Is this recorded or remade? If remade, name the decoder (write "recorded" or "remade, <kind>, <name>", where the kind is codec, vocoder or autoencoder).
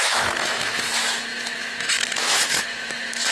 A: remade, autoencoder, DAC-VAE